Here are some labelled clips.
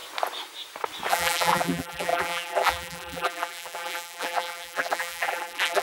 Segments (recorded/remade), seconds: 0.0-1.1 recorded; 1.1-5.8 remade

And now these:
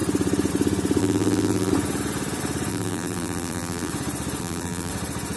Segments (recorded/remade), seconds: 0.0-1.0 recorded; 1.0-1.7 remade; 1.7-2.7 recorded; 2.7-3.9 remade; 3.9-4.4 recorded; 4.4-4.9 remade; 4.9-5.4 recorded

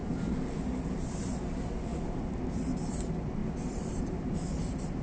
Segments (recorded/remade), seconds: 0.0-3.4 recorded; 3.4-4.3 remade; 4.3-5.0 recorded

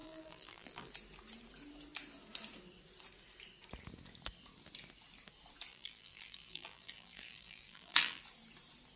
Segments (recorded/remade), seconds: 0.0-0.9 remade; 0.9-5.7 recorded; 5.7-8.2 remade; 8.2-9.0 recorded

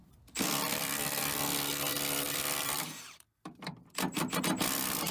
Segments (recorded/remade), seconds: 0.0-1.2 remade; 1.2-1.9 recorded; 1.9-4.4 remade; 4.4-5.1 recorded